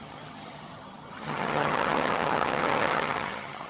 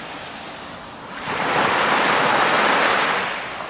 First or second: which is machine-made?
first